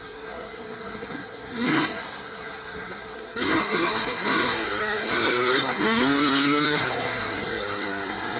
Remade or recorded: remade